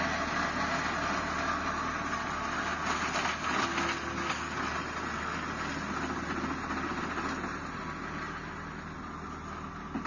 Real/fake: real